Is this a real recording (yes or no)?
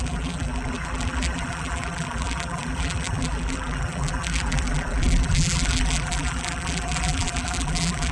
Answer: no